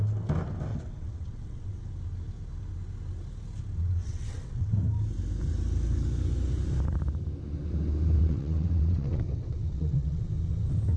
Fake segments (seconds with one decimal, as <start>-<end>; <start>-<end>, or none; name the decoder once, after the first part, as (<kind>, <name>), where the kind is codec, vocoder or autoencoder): 0.7-1.8 (vocoder, WaveNeXt); 4.0-4.8; 8.2-10.3